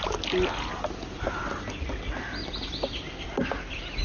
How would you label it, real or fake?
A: fake